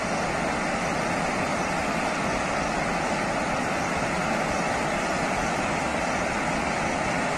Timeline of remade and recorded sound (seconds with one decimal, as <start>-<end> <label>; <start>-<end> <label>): 0.0-7.4 recorded